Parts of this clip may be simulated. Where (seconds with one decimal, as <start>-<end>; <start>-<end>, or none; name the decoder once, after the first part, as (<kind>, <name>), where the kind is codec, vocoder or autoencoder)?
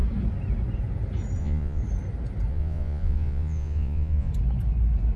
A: 1.4-1.8 (vocoder, Vocos); 2.5-4.3